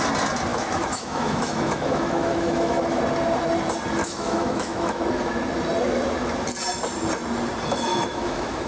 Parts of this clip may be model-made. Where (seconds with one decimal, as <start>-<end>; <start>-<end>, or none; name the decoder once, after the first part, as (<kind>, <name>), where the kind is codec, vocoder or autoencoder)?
0.5-3.0 (autoencoder, DAC-VAE); 4.0-5.0; 7.9-8.7